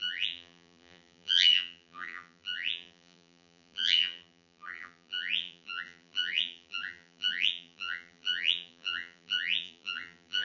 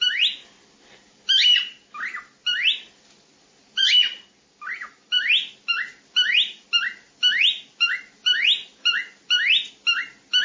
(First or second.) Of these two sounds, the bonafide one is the second